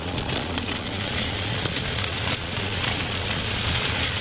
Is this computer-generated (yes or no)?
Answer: yes